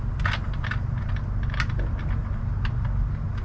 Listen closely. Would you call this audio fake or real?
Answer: real